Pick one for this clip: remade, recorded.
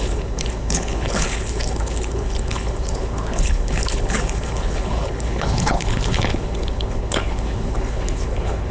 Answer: remade